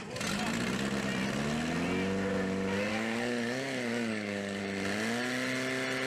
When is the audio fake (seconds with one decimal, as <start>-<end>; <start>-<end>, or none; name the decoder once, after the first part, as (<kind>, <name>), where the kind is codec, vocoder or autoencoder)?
2.9-4.6 (codec, DAC)